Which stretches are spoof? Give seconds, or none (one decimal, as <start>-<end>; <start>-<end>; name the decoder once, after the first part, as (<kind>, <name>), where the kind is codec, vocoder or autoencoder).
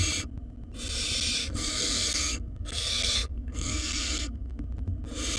1.4-4.6 (codec, SNAC)